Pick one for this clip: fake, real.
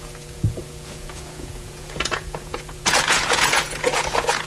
fake